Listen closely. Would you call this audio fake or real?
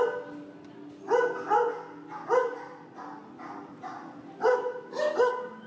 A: real